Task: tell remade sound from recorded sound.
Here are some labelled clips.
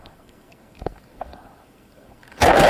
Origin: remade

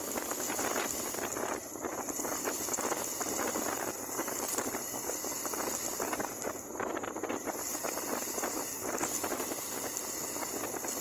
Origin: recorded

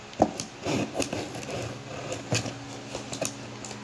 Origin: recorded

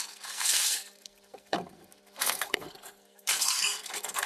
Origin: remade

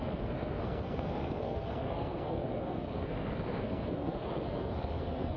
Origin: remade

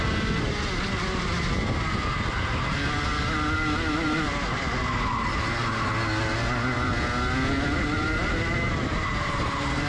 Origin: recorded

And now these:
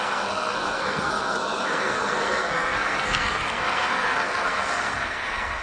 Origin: remade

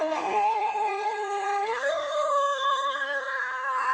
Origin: remade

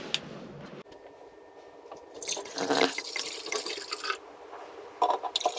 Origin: recorded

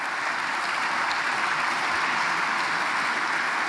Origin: recorded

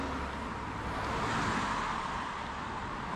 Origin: recorded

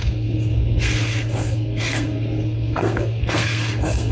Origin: remade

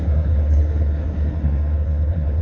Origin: remade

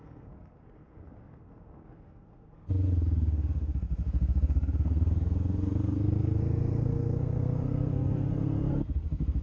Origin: remade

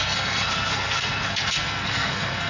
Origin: remade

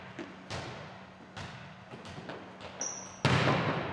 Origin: recorded